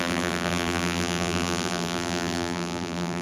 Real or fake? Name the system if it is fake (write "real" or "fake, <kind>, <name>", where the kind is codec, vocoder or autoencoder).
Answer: fake, vocoder, BigVGAN v2